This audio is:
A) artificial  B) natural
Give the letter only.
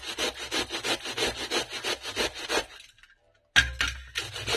B